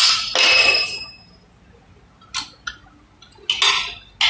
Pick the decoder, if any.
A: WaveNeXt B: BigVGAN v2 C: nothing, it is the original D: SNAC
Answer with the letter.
C